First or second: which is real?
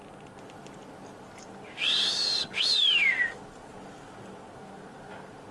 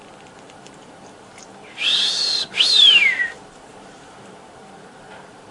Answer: first